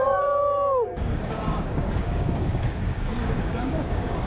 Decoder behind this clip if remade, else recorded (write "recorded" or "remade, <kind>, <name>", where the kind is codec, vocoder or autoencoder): remade, codec, DAC